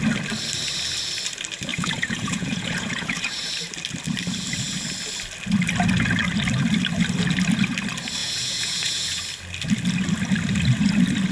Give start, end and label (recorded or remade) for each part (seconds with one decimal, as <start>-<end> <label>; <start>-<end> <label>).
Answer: 0.0-1.7 recorded; 1.7-3.5 remade; 3.5-8.2 recorded; 8.2-9.2 remade; 9.2-11.3 recorded